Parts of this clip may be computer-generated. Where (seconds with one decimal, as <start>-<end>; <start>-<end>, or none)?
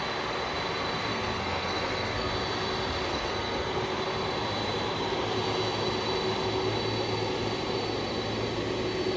1.1-2.3; 3.1-3.8